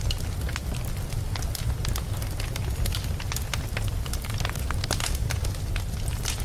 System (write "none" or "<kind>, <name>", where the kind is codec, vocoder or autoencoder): none